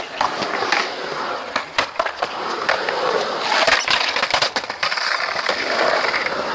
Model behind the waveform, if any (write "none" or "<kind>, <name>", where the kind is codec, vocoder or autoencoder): none